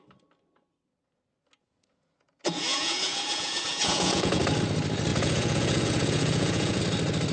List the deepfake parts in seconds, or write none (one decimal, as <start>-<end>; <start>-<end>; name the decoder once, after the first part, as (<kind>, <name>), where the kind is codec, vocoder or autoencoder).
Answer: 1.6-4.4 (vocoder, Vocos); 5.1-6.8